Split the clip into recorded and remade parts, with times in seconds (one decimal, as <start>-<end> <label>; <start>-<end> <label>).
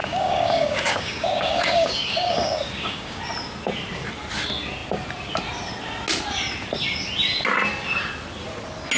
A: 0.0-3.2 remade; 3.2-9.0 recorded